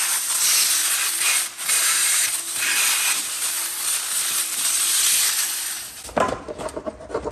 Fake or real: real